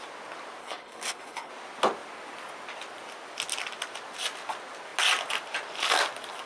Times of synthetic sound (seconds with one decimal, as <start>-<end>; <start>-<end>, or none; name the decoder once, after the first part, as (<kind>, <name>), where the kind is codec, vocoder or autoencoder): 0.6-1.5 (codec, HILCodec)